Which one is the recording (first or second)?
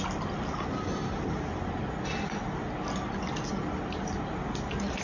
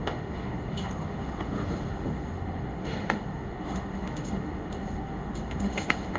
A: first